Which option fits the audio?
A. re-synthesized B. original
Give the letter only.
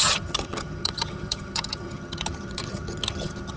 A